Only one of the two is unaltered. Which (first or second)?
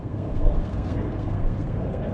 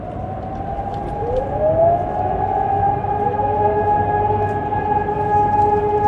second